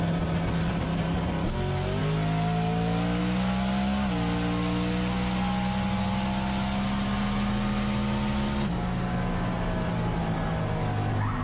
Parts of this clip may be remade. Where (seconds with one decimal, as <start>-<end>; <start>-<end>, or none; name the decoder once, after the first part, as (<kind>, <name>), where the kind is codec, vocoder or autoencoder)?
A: none